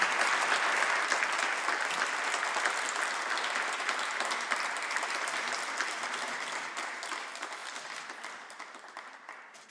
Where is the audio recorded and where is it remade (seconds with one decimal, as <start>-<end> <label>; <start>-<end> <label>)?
0.0-9.7 recorded